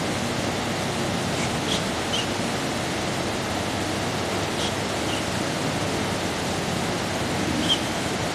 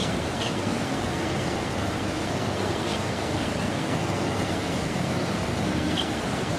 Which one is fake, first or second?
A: second